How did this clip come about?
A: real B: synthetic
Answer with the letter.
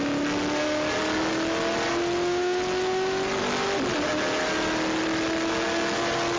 A